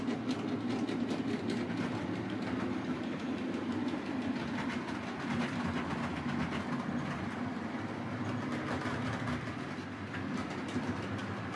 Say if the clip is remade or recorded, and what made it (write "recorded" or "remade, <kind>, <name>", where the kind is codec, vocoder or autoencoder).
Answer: recorded